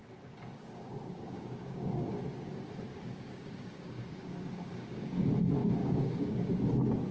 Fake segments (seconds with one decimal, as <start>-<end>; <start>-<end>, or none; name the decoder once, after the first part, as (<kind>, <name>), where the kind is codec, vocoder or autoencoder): 0.0-2.1 (codec, DAC); 2.9-5.3; 5.8-6.5